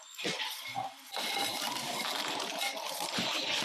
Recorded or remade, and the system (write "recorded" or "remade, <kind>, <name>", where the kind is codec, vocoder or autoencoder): remade, vocoder, BigVGAN v2